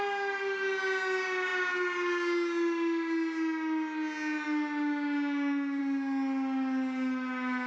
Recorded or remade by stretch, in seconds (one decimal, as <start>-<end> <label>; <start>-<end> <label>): 0.0-7.7 recorded